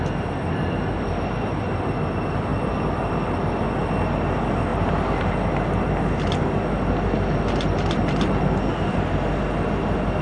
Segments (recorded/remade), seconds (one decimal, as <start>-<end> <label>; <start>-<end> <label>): 0.0-10.2 recorded